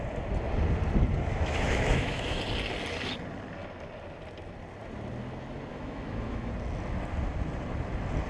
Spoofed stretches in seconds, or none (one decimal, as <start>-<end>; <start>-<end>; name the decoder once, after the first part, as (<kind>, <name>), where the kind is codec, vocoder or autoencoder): 1.3-2.4 (autoencoder, DAC-VAE); 5.7-6.5